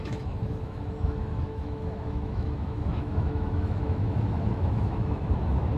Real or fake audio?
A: fake